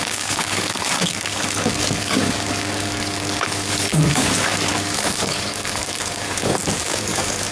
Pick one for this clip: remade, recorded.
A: remade